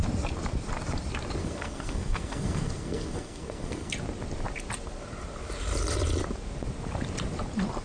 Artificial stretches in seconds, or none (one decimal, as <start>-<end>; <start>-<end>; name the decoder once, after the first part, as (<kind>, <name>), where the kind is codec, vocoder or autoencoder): 1.4-3.9 (codec, SNAC)